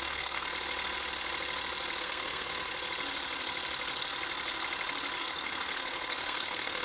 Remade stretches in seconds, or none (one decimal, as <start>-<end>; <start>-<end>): 0.0-0.5; 2.0-2.7; 5.2-6.8